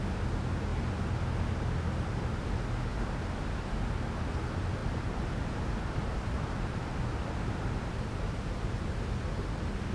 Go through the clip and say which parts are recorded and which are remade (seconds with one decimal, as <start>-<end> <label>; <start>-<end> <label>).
0.0-4.8 recorded; 4.8-7.7 remade; 7.7-9.9 recorded